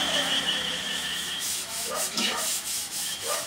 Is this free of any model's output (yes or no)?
no